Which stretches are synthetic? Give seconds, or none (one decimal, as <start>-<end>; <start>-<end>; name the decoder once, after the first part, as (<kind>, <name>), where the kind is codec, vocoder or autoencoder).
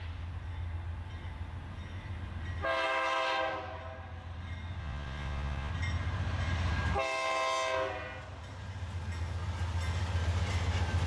4.8-5.7 (vocoder, Vocos)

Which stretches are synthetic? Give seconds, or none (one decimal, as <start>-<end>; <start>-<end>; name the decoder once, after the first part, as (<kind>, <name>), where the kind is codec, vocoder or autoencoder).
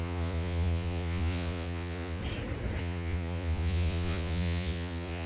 0.0-2.2 (vocoder, Vocos); 2.8-5.3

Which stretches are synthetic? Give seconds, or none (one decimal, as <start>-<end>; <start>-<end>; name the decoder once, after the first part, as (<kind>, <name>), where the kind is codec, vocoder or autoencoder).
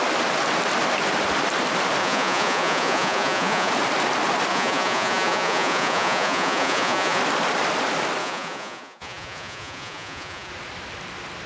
2.0-3.7 (vocoder, Vocos); 4.5-7.2; 8.2-10.5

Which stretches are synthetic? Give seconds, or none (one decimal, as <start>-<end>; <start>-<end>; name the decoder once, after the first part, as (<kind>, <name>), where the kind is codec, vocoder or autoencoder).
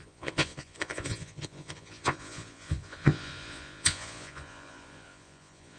0.0-5.8 (vocoder, Vocos)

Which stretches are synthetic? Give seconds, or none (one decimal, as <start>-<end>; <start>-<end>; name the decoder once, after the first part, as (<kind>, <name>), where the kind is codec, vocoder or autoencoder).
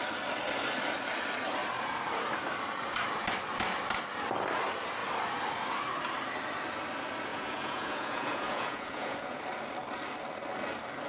7.3-9.4 (vocoder, Vocos)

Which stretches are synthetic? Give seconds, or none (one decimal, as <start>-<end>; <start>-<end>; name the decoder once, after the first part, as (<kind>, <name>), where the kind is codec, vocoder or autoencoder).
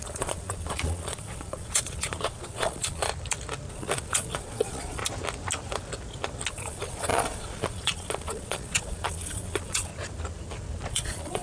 0.0-3.1 (vocoder, Vocos); 3.7-5.0; 6.5-9.9; 10.9-11.4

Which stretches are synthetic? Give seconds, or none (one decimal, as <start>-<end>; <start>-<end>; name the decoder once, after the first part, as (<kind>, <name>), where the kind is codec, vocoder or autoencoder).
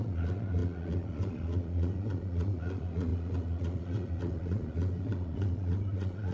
0.0-6.3 (vocoder, Vocos)